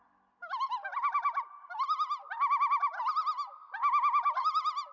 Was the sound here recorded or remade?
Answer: recorded